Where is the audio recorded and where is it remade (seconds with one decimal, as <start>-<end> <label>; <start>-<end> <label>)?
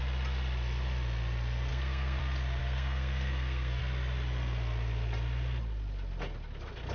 0.0-1.7 recorded; 1.7-2.2 remade; 2.2-2.6 recorded; 2.6-3.8 remade; 3.8-6.9 recorded